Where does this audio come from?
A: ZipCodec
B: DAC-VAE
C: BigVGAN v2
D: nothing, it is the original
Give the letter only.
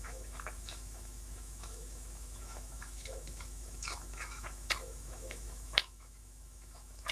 B